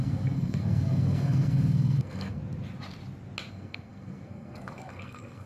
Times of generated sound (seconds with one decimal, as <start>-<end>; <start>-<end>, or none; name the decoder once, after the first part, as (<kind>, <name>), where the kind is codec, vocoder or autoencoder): 0.0-2.4 (codec, SNAC); 3.5-5.5